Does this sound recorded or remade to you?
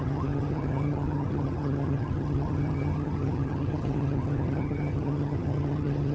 remade